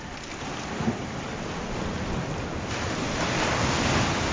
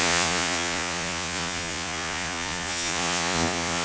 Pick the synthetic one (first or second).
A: second